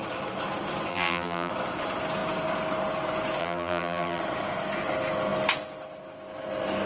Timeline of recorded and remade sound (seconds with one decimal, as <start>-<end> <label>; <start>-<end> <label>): 0.0-0.9 recorded; 0.9-1.5 remade; 1.5-3.4 recorded; 3.4-4.2 remade; 4.2-6.9 recorded